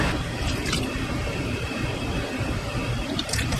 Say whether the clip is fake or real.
fake